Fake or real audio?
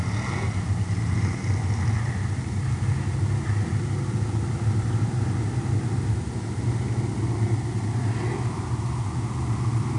real